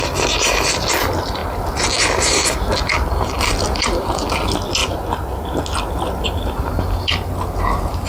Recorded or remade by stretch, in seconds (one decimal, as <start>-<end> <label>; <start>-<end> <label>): 0.0-8.1 recorded